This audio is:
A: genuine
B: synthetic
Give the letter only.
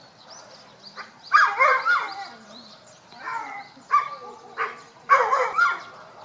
A